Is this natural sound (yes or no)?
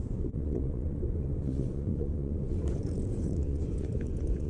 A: no